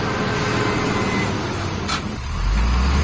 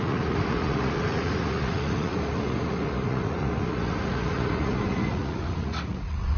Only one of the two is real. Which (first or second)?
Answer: first